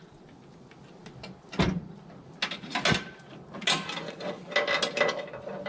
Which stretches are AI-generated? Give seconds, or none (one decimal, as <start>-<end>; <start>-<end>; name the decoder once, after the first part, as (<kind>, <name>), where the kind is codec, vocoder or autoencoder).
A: none